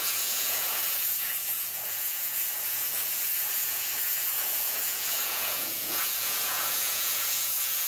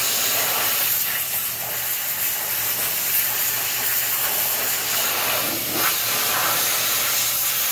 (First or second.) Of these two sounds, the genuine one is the second